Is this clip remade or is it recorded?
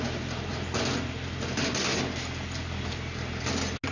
recorded